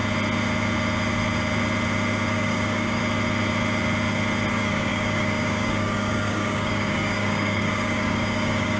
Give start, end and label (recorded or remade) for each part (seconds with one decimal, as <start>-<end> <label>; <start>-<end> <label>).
0.0-2.3 recorded; 2.3-3.0 remade; 3.0-4.5 recorded; 4.5-8.8 remade

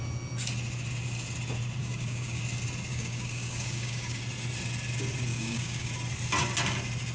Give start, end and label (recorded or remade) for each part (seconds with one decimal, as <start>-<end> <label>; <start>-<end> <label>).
0.0-1.8 recorded; 1.8-2.4 remade; 2.4-2.9 recorded; 2.9-4.2 remade; 4.2-5.3 recorded; 5.3-5.9 remade; 5.9-7.1 recorded

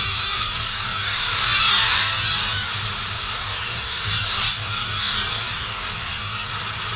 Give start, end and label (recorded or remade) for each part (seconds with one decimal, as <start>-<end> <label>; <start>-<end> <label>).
0.0-2.7 remade; 2.7-3.2 recorded; 3.2-6.5 remade; 6.5-7.0 recorded